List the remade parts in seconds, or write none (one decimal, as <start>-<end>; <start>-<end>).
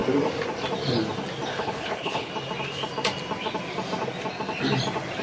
1.5-2.3